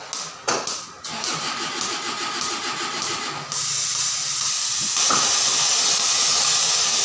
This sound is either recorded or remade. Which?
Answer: recorded